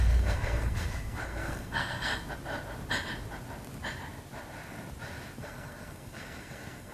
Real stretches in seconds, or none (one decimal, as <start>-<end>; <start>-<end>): 2.1-5.4